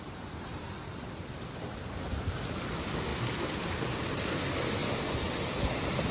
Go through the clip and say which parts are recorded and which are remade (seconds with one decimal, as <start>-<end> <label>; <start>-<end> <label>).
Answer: 0.0-3.1 recorded; 3.1-4.3 remade; 4.3-6.1 recorded

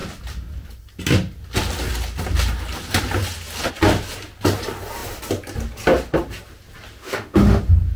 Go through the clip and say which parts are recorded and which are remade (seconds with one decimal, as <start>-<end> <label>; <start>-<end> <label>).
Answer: 0.0-7.0 recorded; 7.0-7.6 remade; 7.6-8.0 recorded

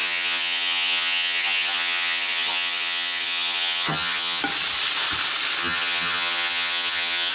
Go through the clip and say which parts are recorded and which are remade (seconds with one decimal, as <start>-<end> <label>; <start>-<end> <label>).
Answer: 0.0-4.4 remade; 4.4-5.6 recorded; 5.6-7.3 remade

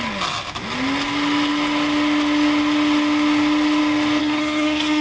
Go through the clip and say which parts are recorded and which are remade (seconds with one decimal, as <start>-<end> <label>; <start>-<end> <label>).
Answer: 0.0-4.2 recorded; 4.2-5.0 remade

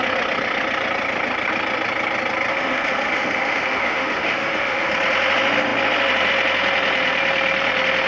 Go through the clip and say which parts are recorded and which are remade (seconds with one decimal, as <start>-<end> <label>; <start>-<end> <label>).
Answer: 0.0-2.5 recorded; 2.5-4.9 remade; 4.9-8.1 recorded

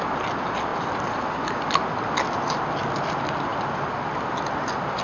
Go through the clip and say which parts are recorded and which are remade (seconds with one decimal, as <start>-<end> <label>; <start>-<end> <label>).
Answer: 0.0-5.0 recorded